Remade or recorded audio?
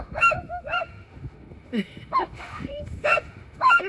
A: remade